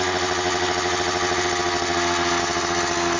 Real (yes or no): yes